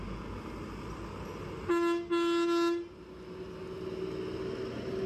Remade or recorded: recorded